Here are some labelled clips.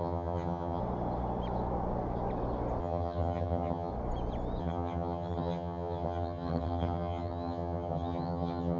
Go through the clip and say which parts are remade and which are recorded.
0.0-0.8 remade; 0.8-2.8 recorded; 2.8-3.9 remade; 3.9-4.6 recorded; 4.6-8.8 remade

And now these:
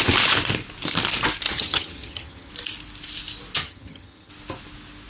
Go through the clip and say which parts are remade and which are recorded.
0.0-1.5 recorded; 1.5-2.5 remade; 2.5-3.6 recorded; 3.6-4.3 remade; 4.3-5.1 recorded

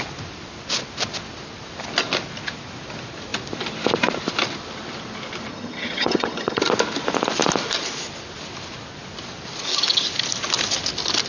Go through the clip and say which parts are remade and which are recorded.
0.0-5.5 recorded; 5.5-6.6 remade; 6.6-11.3 recorded

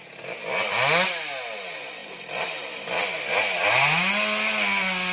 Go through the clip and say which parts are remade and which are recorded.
0.0-5.1 recorded

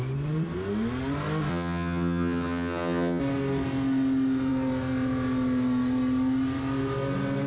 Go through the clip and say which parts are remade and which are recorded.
0.0-1.5 recorded; 1.5-3.2 remade; 3.2-7.5 recorded

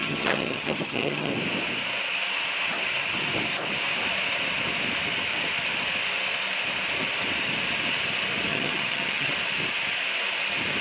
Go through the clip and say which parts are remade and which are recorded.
0.0-1.3 remade; 1.3-8.5 recorded; 8.5-9.3 remade; 9.3-10.8 recorded

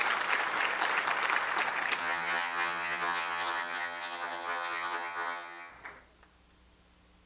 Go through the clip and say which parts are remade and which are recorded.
0.0-2.0 recorded; 2.0-5.7 remade; 5.7-7.3 recorded